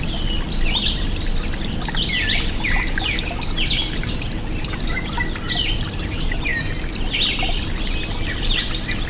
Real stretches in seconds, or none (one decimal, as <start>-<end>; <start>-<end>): 0.0-9.1